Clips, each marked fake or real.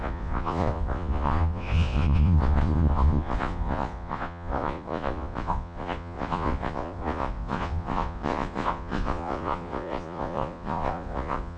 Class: fake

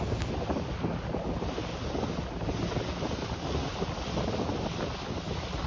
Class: real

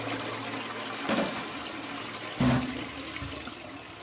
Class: real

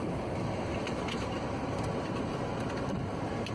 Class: real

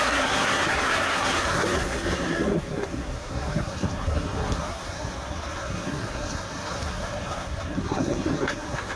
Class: fake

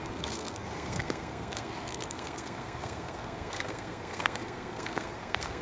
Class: fake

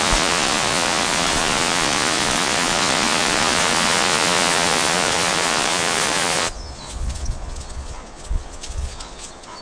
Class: fake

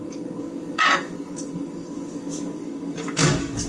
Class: fake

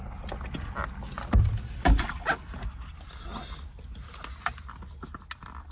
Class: real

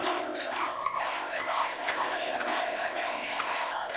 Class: fake